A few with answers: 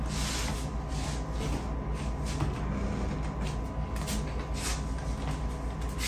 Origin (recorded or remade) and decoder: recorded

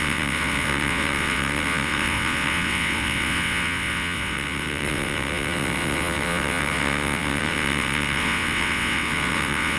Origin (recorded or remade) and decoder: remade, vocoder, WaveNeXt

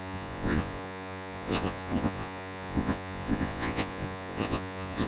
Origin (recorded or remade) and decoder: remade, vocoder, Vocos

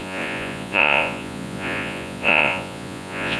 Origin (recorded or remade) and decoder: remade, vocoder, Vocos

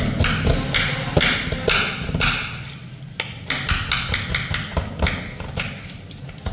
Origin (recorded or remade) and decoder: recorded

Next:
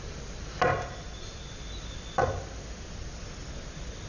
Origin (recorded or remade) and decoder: recorded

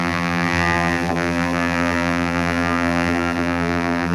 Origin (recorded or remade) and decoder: remade, vocoder, BigVGAN v2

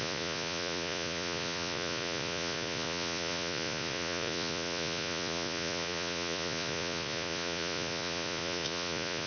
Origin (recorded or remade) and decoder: remade, vocoder, Vocos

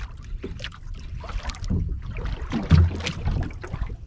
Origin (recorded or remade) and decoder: recorded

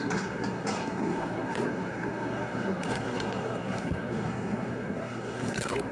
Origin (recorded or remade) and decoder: remade, codec, SNAC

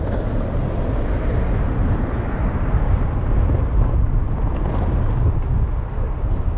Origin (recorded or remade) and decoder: recorded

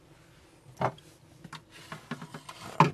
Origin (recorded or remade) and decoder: recorded